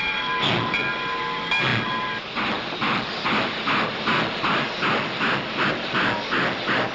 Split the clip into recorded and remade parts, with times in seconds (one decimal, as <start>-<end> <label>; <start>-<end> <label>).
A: 0.0-6.9 recorded